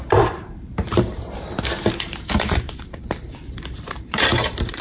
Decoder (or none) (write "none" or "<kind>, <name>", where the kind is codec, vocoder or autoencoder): vocoder, BigVGAN v2